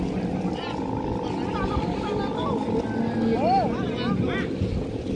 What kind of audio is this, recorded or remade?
recorded